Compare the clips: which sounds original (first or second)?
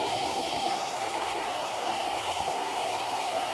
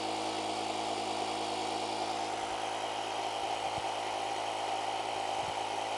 second